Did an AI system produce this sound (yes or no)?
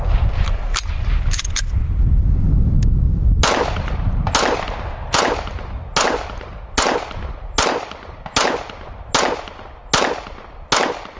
no